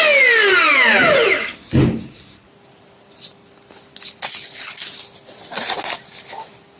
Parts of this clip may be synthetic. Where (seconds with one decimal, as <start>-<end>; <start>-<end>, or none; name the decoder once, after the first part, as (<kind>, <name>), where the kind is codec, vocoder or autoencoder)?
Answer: none